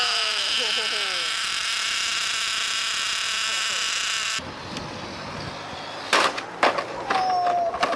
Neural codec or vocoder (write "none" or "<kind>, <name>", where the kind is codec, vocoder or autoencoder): none